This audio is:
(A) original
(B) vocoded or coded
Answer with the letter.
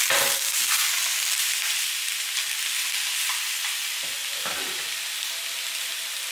B